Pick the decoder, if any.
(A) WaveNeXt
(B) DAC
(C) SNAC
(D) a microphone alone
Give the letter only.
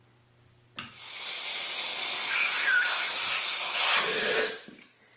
D